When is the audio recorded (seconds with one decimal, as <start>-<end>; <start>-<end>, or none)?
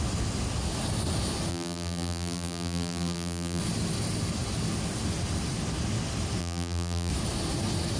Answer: 0.0-1.5; 3.6-6.4; 7.1-8.0